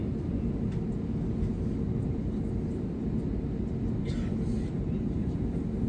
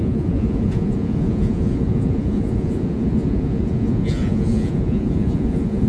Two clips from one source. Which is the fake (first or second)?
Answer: second